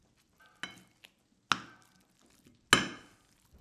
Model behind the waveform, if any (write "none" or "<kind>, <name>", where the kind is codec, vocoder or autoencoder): none